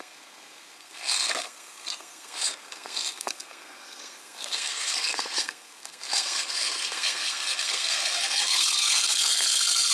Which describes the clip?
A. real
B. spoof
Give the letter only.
B